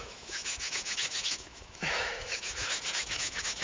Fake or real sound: fake